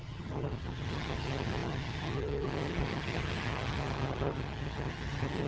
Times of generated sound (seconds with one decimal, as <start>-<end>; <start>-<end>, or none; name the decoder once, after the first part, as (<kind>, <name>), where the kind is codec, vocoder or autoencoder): 0.0-5.5 (vocoder, HiFi-GAN)